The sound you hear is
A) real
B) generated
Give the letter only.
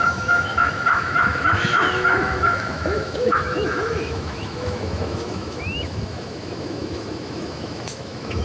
B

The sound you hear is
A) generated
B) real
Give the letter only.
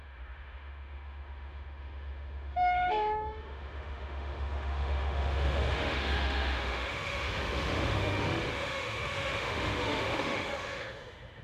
A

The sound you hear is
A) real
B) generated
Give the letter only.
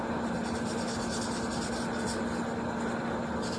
A